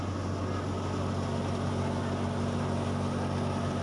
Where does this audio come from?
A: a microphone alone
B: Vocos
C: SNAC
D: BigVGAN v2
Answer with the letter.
A